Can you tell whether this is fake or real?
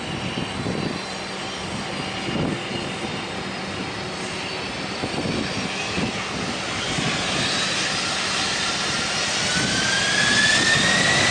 real